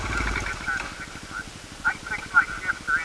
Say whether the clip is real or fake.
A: real